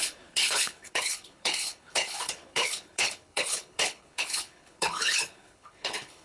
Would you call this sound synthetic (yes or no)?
yes